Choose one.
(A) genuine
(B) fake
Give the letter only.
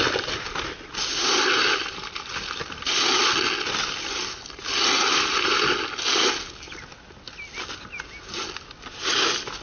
A